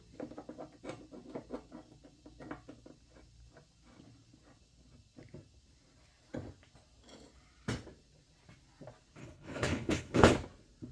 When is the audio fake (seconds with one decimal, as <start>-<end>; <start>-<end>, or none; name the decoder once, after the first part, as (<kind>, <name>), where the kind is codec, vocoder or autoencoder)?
9.2-10.3 (codec, HILCodec)